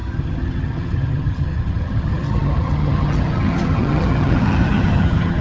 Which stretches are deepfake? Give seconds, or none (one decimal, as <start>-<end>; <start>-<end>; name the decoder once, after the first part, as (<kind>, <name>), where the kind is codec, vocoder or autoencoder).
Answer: 0.0-5.4 (vocoder, HiFi-GAN)